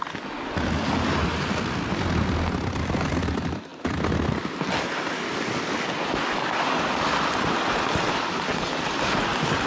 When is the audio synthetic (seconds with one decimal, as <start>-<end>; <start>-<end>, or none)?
none